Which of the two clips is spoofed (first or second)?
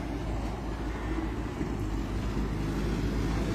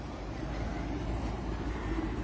second